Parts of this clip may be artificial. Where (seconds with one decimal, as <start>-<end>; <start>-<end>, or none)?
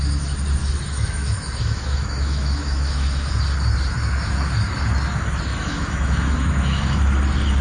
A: 0.6-3.3; 5.5-7.0